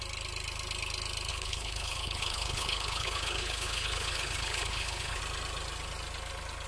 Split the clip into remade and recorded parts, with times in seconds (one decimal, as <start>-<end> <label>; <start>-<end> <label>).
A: 0.0-1.3 recorded; 1.3-5.2 remade; 5.2-6.7 recorded